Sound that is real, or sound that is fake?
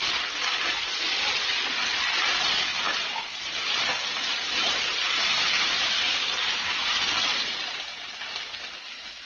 real